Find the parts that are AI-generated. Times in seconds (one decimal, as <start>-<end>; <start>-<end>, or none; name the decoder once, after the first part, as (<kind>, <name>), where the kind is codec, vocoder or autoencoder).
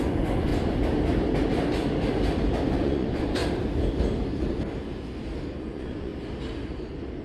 0.0-0.5 (vocoder, Vocos); 2.7-3.4; 5.6-6.1